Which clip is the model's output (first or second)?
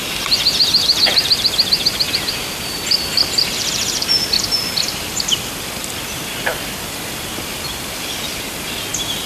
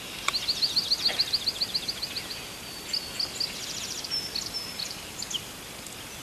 first